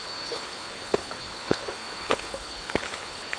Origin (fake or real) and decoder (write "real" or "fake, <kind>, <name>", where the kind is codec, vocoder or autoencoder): fake, codec, HILCodec